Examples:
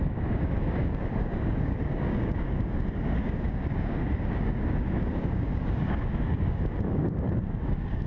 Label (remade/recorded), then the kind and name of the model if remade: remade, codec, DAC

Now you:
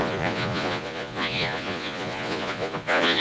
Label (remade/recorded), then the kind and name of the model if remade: remade, vocoder, Vocos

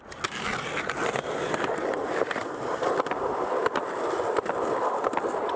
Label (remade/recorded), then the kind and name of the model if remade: recorded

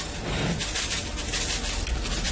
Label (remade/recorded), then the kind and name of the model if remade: recorded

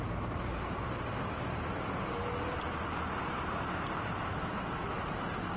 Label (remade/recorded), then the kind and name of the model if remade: recorded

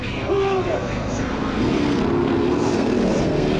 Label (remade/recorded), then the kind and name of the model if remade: remade, codec, SNAC